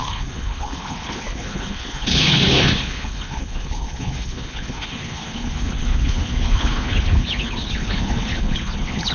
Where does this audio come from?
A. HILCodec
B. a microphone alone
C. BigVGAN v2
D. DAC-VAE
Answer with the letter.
A